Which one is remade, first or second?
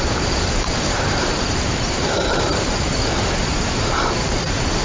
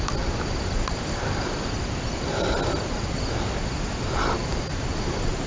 first